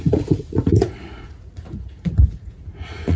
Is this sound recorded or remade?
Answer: remade